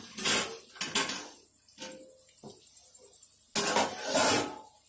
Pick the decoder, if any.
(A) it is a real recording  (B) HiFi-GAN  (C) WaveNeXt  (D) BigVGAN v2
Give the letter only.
A